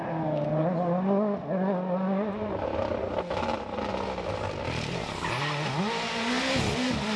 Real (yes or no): yes